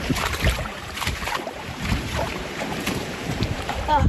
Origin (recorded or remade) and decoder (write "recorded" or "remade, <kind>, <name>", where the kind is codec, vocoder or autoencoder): remade, vocoder, BigVGAN v2